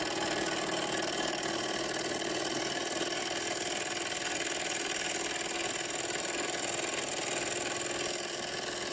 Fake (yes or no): no